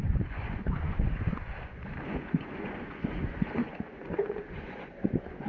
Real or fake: fake